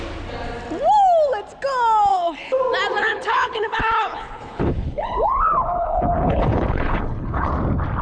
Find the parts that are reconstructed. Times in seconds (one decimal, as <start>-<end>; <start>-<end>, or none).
2.1-2.6; 3.0-7.5